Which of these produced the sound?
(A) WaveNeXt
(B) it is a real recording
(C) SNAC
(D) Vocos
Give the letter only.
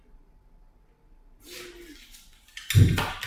B